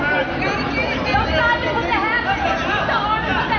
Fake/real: real